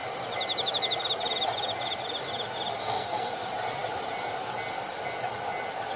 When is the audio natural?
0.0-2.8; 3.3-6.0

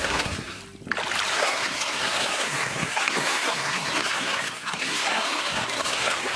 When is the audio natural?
0.6-1.3

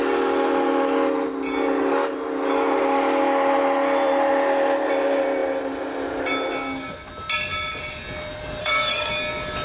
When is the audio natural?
0.0-8.6; 9.1-9.6

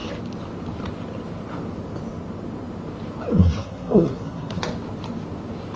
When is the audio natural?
0.0-3.4; 4.6-5.8

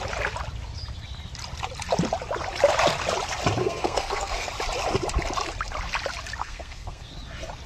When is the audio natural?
0.0-3.6; 4.5-6.4; 7.1-7.7

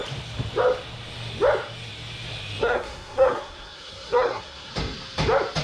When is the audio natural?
0.0-2.6; 4.7-5.6